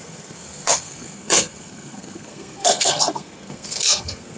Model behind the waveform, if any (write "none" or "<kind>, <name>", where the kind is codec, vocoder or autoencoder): codec, SNAC